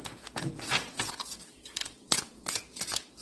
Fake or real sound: fake